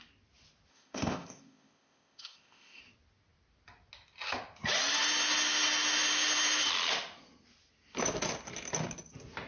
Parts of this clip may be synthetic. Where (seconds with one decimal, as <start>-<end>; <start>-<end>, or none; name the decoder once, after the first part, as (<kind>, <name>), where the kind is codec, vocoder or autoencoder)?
0.7-2.8 (codec, ZipCodec)